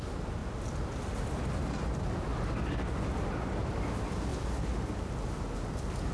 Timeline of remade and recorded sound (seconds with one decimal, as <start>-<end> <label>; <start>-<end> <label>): 0.0-0.4 recorded; 0.4-1.7 remade; 1.7-4.3 recorded; 4.3-5.1 remade; 5.1-6.1 recorded

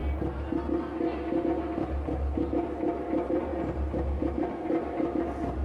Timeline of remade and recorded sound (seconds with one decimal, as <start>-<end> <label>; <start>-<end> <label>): 0.0-2.5 recorded; 2.5-3.5 remade; 3.5-4.2 recorded; 4.2-5.6 remade